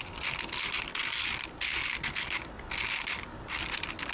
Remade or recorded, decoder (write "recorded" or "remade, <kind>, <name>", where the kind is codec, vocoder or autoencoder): recorded